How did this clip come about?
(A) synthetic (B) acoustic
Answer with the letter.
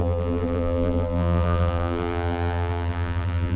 A